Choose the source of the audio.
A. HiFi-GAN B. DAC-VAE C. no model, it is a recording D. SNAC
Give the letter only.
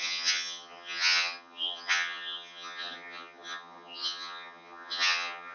A